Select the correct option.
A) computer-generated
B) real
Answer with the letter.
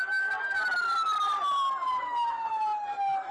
B